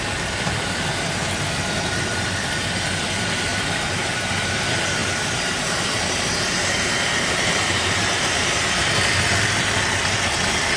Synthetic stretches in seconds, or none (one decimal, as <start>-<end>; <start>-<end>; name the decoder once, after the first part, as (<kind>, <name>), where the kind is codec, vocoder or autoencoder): 3.5-4.6 (vocoder, BigVGAN v2); 5.0-8.7